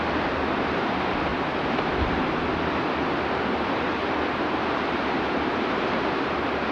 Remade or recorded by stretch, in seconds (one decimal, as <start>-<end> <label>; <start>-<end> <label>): 0.0-6.7 recorded